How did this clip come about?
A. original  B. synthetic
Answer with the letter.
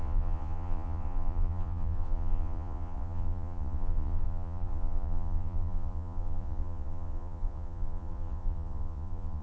B